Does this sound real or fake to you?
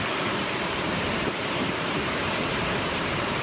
fake